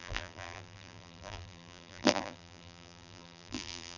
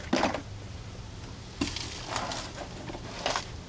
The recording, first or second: second